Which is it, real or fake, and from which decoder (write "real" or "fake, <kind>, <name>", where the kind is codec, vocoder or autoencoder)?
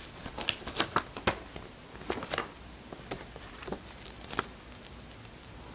real